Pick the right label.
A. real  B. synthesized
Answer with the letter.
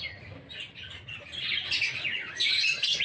A